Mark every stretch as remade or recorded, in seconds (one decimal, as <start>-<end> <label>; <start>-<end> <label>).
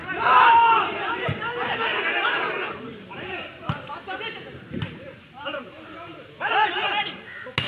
0.0-0.9 remade; 0.9-4.5 recorded; 4.5-5.3 remade; 5.3-7.7 recorded